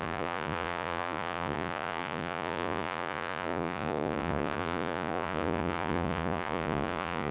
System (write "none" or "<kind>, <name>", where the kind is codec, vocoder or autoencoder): vocoder, Vocos